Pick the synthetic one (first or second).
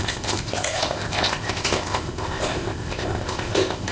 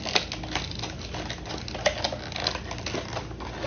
first